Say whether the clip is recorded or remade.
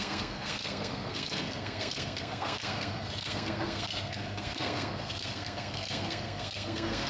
remade